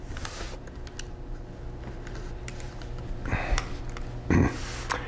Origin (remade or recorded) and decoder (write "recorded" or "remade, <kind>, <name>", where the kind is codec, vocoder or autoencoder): recorded